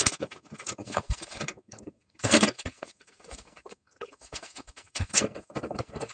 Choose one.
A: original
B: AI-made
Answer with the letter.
B